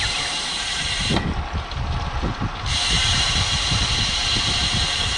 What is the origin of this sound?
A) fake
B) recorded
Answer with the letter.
B